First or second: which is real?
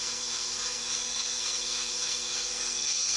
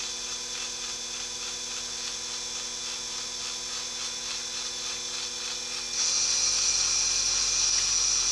second